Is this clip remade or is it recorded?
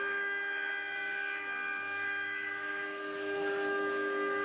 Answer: remade